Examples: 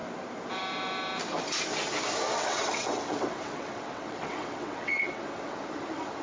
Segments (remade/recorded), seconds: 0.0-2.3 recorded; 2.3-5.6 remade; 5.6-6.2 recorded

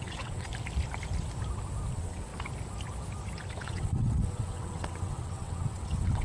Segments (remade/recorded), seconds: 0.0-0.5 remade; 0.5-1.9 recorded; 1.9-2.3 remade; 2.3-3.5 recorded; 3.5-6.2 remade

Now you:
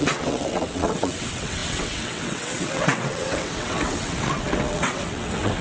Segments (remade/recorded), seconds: 0.0-5.6 remade

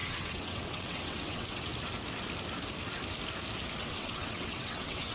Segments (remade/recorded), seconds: 0.0-1.7 remade; 1.7-3.8 recorded; 3.8-5.1 remade

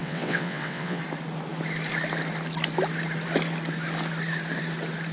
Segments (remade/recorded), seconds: 0.0-1.0 remade; 1.0-5.1 recorded

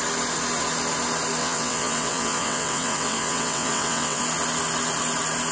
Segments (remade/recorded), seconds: 0.0-1.4 recorded; 1.4-4.2 remade; 4.2-5.5 recorded

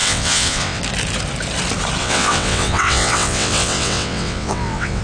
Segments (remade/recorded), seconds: 0.0-0.8 remade; 0.8-2.0 recorded; 2.0-5.0 remade